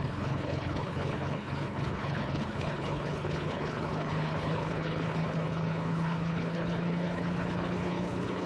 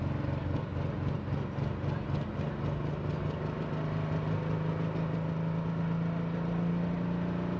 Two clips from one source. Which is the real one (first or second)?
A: second